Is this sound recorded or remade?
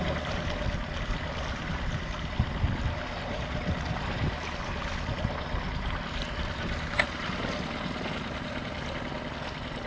recorded